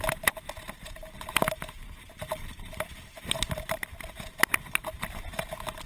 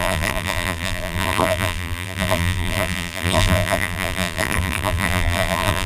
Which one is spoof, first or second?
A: second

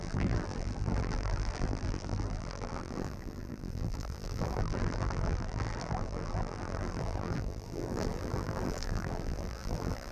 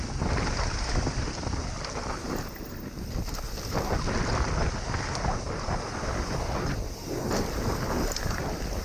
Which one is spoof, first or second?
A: first